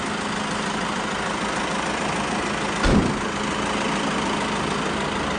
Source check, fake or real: real